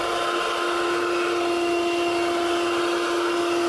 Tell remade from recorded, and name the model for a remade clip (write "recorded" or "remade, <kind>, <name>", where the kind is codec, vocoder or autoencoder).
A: recorded